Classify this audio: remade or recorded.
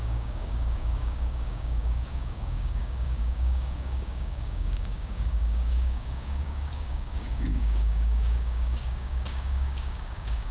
remade